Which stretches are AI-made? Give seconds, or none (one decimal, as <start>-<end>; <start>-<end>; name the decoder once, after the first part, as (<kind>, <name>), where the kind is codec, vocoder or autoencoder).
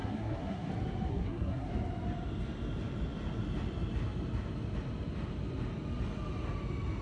0.0-0.7 (codec, SNAC); 1.1-1.7